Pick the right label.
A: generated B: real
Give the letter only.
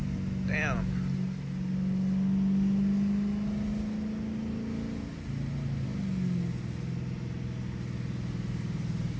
B